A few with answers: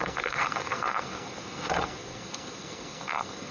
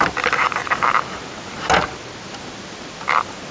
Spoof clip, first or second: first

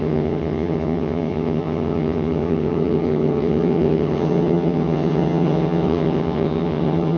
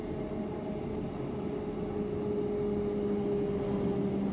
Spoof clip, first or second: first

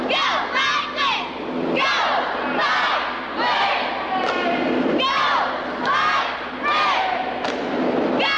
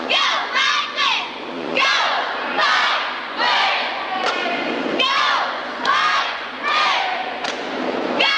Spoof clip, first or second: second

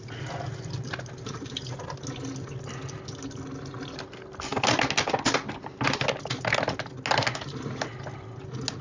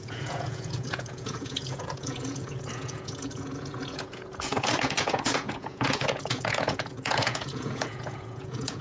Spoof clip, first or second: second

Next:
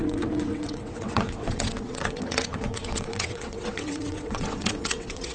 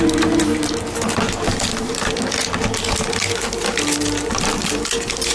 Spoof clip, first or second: first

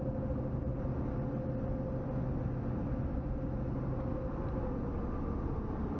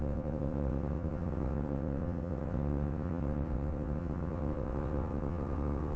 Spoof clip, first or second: second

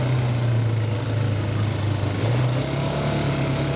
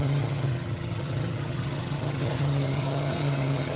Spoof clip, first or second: second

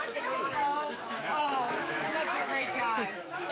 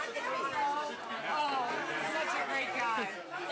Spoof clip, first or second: first